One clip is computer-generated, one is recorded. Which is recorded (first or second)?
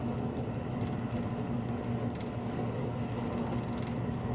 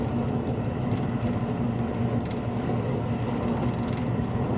first